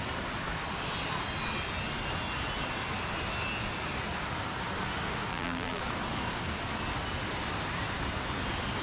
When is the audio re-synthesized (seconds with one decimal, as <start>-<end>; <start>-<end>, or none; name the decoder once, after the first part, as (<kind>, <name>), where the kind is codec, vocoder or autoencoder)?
5.3-5.8 (vocoder, BigVGAN v2)